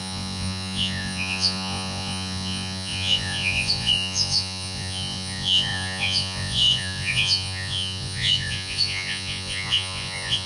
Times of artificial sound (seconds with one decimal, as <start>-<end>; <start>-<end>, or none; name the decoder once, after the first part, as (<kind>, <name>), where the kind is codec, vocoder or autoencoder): 0.0-10.5 (vocoder, Vocos)